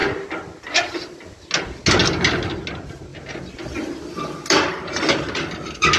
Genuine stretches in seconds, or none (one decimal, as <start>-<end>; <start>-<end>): 0.0-6.0